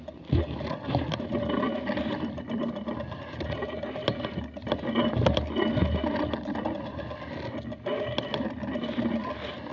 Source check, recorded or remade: recorded